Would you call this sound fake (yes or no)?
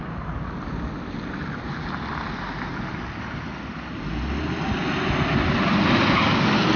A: no